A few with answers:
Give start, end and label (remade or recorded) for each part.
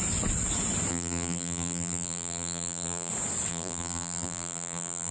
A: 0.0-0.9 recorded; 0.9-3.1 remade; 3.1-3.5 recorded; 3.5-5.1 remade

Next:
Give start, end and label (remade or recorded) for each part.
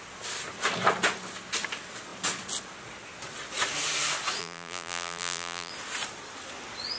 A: 0.0-4.4 recorded; 4.4-5.7 remade; 5.7-7.0 recorded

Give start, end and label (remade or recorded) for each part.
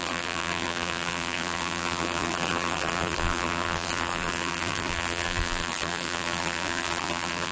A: 0.0-7.5 remade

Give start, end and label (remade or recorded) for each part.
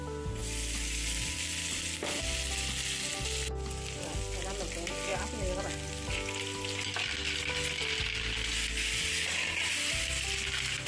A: 0.0-10.9 recorded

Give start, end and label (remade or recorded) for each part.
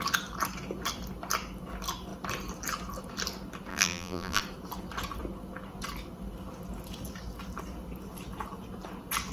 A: 0.0-3.7 recorded; 3.7-4.4 remade; 4.4-9.3 recorded